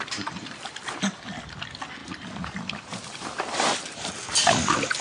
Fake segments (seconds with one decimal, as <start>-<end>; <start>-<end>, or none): none